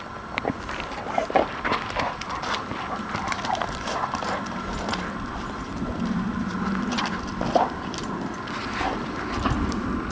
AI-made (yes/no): no